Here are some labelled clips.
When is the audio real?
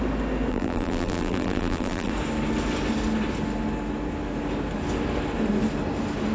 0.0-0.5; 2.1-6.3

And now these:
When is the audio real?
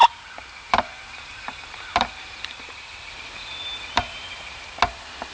3.1-3.7; 4.6-5.3